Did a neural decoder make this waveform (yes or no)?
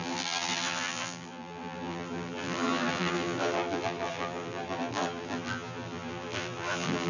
yes